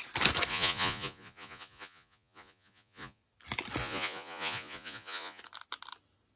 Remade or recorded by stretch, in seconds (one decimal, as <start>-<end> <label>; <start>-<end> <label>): 0.0-0.5 recorded; 0.5-3.2 remade; 3.2-3.8 recorded; 3.8-5.4 remade; 5.4-6.4 recorded